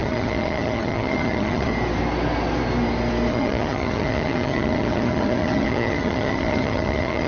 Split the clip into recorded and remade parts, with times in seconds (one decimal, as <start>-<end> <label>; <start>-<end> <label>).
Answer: 0.0-1.7 remade; 1.7-3.3 recorded; 3.3-7.3 remade